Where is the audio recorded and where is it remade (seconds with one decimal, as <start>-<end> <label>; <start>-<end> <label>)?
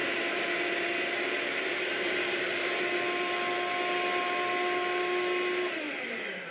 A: 0.0-2.7 remade; 2.7-5.7 recorded; 5.7-6.5 remade